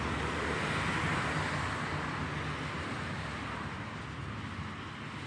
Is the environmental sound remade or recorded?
recorded